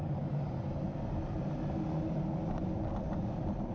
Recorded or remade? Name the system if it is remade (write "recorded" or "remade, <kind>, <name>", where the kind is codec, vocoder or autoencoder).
recorded